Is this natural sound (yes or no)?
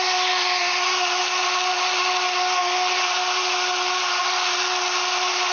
yes